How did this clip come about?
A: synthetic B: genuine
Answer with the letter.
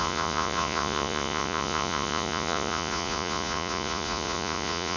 A